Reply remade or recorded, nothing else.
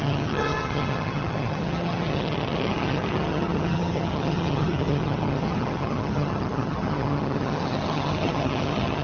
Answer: remade